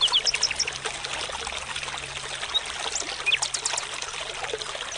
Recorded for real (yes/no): yes